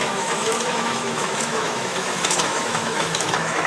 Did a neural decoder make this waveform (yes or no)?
yes